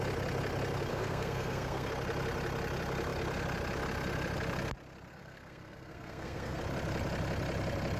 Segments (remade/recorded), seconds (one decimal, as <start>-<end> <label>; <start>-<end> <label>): 0.0-0.9 recorded; 0.9-1.9 remade; 1.9-5.1 recorded; 5.1-6.6 remade; 6.6-8.0 recorded